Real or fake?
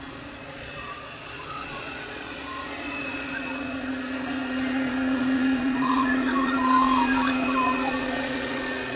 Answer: fake